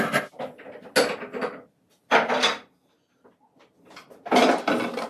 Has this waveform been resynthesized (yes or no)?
no